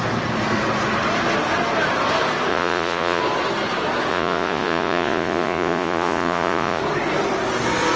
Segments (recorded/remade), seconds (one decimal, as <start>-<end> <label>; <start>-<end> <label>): 0.0-2.5 recorded; 2.5-3.2 remade; 3.2-4.1 recorded; 4.1-6.8 remade; 6.8-8.0 recorded